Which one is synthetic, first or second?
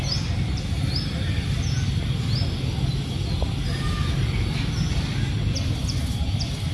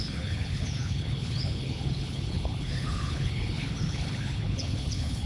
second